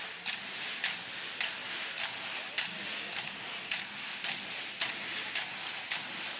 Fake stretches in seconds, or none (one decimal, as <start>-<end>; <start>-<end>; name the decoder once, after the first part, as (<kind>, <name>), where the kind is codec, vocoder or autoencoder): none